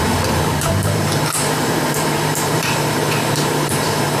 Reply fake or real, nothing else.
fake